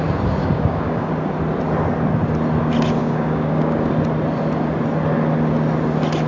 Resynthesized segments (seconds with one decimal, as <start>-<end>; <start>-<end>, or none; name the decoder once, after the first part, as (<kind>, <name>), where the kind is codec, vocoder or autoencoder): 0.4-1.1 (codec, DAC); 3.0-3.9